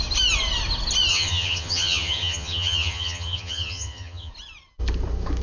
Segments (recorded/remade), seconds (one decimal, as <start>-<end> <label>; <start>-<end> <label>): 0.0-1.1 recorded; 1.1-4.3 remade; 4.3-5.4 recorded